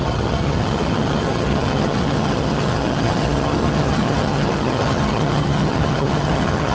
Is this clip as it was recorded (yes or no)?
no